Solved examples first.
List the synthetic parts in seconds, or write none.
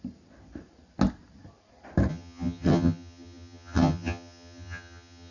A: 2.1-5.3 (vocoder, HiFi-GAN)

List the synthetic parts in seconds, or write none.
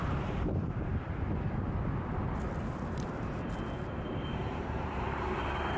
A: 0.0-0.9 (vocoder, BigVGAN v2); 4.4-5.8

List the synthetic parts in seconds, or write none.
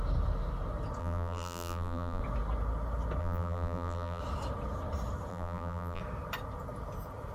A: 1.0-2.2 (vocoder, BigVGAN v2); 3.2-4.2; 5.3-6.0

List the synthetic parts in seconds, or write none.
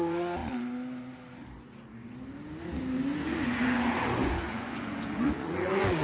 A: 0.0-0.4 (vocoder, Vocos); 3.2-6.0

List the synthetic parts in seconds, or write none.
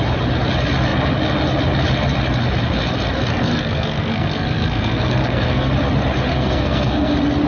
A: 3.2-5.7 (codec, SNAC); 6.3-7.1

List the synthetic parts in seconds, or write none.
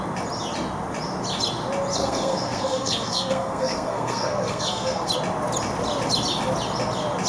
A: 1.9-5.1 (codec, SNAC)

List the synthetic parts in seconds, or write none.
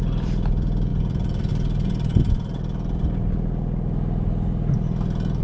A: 0.0-2.1 (vocoder, BigVGAN v2)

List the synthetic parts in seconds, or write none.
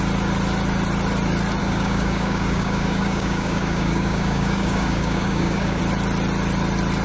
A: 1.6-5.8 (codec, DAC)